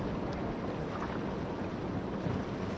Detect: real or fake real